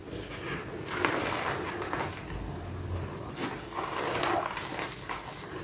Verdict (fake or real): real